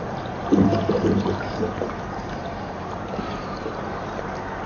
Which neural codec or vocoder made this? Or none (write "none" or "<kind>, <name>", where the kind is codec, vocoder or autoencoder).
vocoder, BigVGAN v2